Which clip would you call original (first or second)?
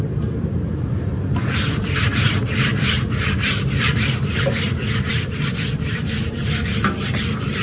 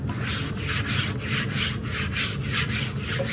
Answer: second